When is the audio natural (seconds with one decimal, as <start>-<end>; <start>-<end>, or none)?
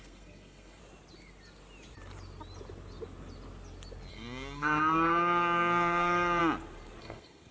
0.8-4.1; 6.4-7.0